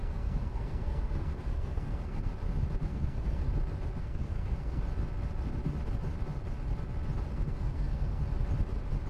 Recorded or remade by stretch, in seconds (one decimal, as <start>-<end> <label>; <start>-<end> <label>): 0.0-2.3 remade; 2.3-2.8 recorded; 2.8-3.5 remade; 3.5-4.0 recorded; 4.0-4.8 remade; 4.8-7.3 recorded; 7.3-8.2 remade; 8.2-9.1 recorded